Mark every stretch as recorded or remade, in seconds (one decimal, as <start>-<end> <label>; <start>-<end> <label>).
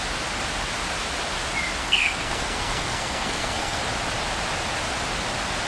0.0-1.8 recorded; 1.8-3.8 remade; 3.8-5.7 recorded